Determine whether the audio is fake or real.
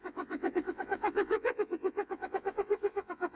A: fake